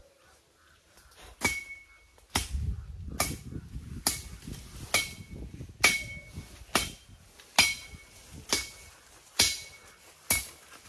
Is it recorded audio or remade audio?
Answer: recorded